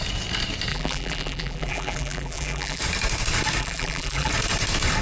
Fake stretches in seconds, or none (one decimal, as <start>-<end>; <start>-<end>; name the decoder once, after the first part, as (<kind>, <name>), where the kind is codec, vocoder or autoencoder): 0.7-2.8 (vocoder, BigVGAN v2); 3.6-4.3